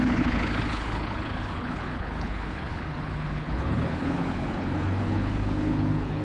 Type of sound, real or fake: fake